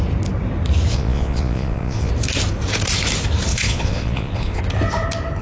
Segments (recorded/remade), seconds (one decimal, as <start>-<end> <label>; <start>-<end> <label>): 0.0-0.9 recorded; 0.9-2.1 remade; 2.1-3.5 recorded; 3.5-4.6 remade; 4.6-5.4 recorded